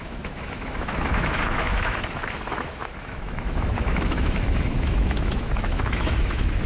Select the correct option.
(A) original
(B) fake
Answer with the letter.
B